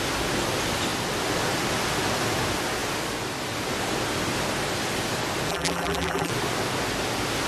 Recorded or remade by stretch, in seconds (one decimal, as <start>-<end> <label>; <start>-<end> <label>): 0.0-5.5 recorded; 5.5-6.3 remade; 6.3-7.5 recorded